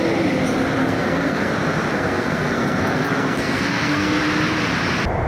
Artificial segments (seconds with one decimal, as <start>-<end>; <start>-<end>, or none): 0.8-1.5; 1.9-4.2